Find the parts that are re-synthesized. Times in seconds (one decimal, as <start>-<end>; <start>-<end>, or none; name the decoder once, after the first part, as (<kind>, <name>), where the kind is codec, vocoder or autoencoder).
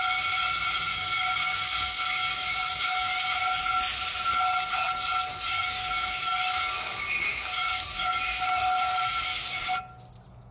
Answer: 0.9-3.6 (codec, DAC); 5.3-9.8